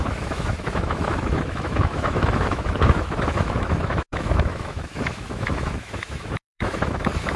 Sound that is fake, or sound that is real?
fake